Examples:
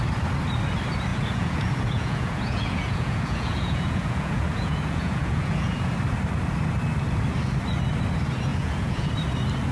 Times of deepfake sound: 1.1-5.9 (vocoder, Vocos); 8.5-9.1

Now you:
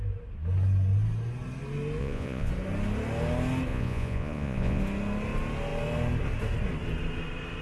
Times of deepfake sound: 2.0-2.5 (vocoder, Vocos); 3.7-4.8